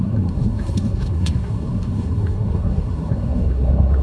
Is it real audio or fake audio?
fake